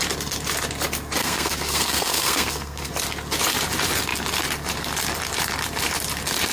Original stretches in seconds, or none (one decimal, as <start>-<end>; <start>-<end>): 0.0-1.2; 2.9-6.5